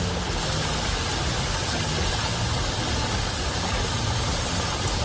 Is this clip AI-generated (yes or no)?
no